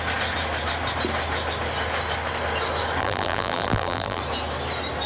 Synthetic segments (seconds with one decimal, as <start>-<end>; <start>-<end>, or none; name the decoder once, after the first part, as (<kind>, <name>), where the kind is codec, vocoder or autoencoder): 3.0-4.2 (vocoder, BigVGAN v2)